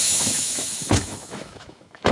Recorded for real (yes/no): no